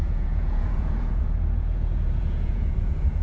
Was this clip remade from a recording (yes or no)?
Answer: yes